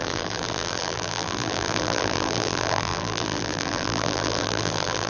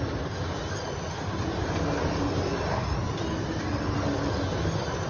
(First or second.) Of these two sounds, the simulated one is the first